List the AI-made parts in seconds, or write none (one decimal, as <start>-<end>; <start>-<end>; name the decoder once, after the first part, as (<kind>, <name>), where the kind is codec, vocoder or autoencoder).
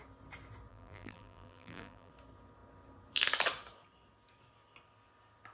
0.7-2.1 (vocoder, BigVGAN v2)